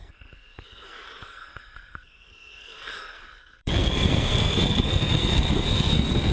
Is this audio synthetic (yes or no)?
yes